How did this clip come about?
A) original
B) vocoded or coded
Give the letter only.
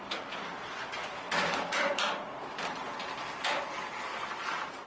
A